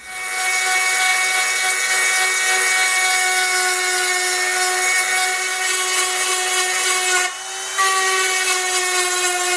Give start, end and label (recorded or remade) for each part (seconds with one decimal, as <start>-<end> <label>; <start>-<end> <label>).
0.0-9.6 recorded